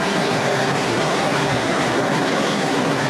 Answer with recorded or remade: remade